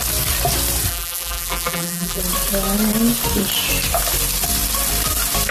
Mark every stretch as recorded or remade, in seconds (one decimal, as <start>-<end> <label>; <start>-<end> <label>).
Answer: 0.0-0.9 recorded; 0.9-2.2 remade; 2.2-5.5 recorded